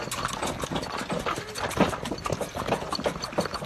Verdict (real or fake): real